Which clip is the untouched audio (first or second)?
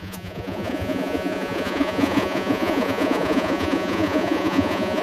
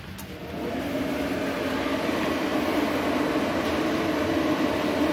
second